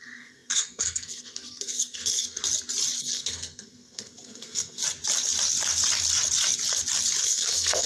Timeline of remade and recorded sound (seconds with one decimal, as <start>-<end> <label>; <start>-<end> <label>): 0.0-2.4 remade; 2.4-3.0 recorded; 3.0-4.8 remade; 4.8-7.2 recorded; 7.2-7.9 remade